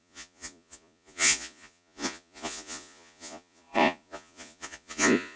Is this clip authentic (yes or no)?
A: no